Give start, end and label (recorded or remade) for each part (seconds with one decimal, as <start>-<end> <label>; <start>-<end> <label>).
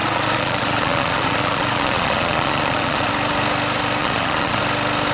0.0-3.1 remade; 3.1-4.0 recorded; 4.0-4.6 remade; 4.6-5.1 recorded